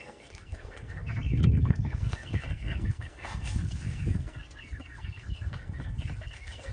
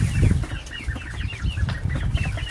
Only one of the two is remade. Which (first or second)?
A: first